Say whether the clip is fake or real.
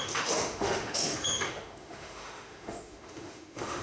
fake